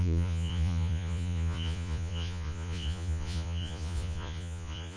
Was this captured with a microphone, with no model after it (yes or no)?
no